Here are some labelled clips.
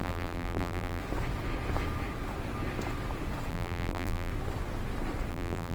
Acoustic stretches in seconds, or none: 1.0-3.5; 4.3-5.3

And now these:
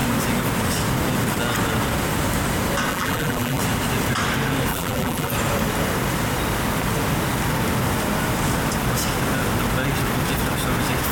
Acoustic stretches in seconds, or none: 0.0-2.9; 3.6-4.7; 5.3-11.1

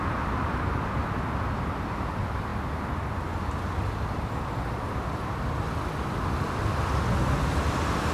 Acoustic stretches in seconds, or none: 0.0-8.1

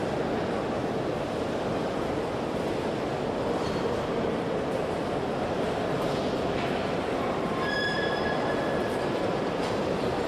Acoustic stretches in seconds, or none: 0.0-0.6

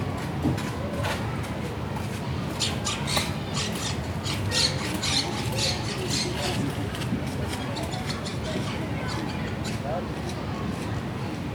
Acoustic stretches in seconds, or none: 0.0-11.5